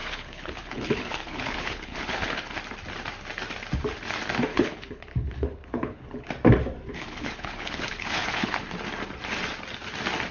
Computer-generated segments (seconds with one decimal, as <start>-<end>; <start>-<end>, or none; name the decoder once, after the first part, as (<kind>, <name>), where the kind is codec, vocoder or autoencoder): 0.0-2.5 (codec, HILCodec); 4.5-6.3; 6.9-8.6